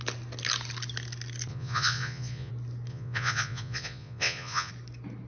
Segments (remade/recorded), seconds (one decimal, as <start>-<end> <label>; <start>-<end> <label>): 0.0-1.5 recorded; 1.5-2.5 remade; 2.5-2.9 recorded; 2.9-4.7 remade; 4.7-5.3 recorded